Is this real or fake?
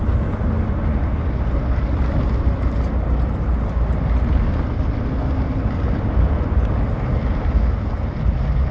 real